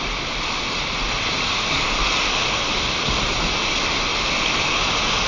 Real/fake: real